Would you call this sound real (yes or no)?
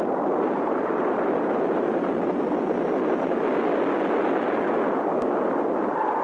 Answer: yes